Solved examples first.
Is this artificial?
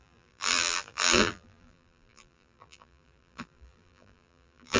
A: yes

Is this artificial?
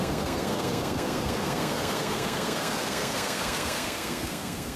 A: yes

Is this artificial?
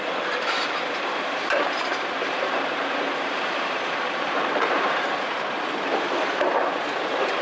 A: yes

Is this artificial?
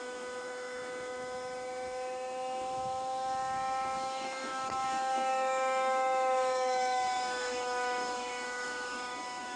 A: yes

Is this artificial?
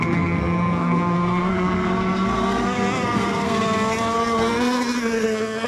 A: yes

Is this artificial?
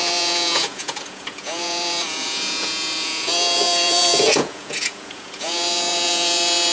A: yes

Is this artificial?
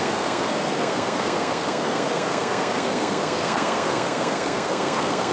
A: yes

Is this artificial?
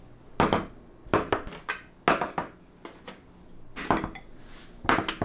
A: no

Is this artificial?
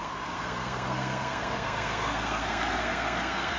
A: yes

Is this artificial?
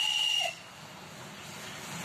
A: no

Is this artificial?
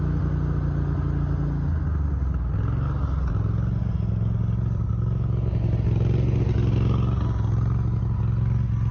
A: no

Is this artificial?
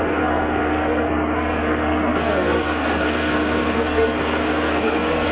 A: yes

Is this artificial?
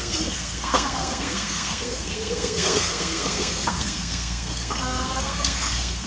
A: yes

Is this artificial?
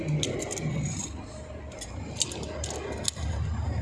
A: no